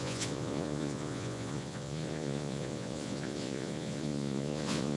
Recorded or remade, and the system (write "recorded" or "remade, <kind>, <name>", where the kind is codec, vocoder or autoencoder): remade, vocoder, Vocos